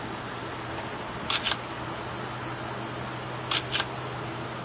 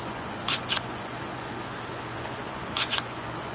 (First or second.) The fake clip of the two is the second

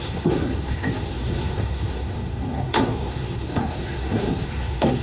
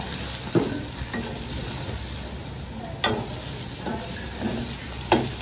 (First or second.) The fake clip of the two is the first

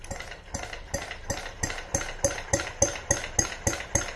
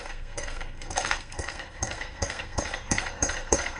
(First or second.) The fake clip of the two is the second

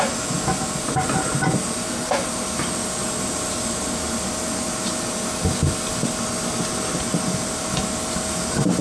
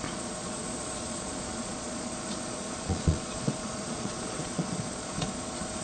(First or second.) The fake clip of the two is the second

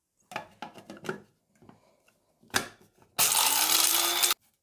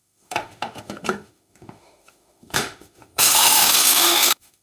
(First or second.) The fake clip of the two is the second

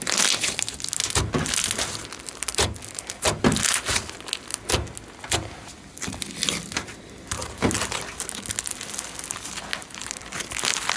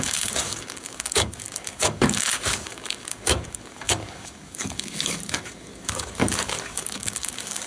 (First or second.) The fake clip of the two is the second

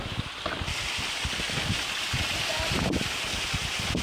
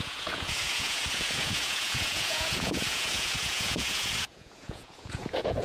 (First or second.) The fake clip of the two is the second